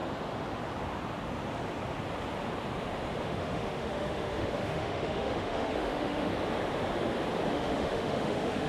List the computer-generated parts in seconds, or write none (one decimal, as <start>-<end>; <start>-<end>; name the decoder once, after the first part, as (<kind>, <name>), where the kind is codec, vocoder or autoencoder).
3.2-6.3 (autoencoder, DAC-VAE); 7.5-8.7

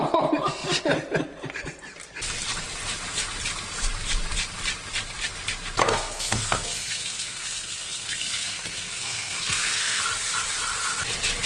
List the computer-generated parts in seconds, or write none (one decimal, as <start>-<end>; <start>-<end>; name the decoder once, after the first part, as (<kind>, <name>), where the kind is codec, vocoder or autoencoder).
5.8-10.0 (codec, SNAC)

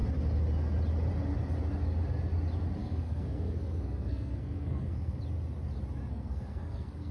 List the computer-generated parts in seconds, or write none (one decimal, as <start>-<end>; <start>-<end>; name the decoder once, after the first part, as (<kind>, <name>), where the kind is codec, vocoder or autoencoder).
2.8-5.2 (codec, SNAC); 6.1-7.1